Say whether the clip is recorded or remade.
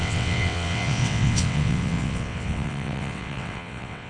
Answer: remade